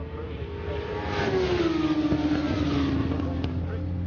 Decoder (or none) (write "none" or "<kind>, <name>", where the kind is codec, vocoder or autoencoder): none